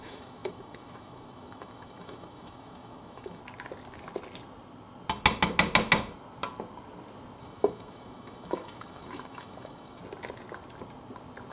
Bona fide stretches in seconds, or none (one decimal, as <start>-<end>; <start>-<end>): 3.4-7.4; 10.0-11.5